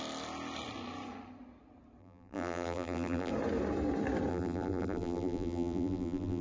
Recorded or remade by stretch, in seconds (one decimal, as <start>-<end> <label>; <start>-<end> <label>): 0.0-2.0 recorded; 2.0-3.3 remade; 3.3-4.3 recorded; 4.3-6.4 remade